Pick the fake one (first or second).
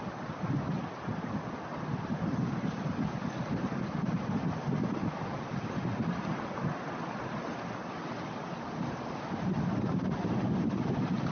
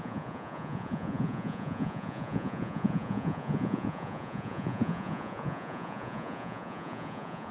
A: second